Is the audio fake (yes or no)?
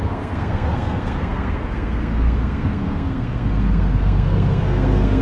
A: yes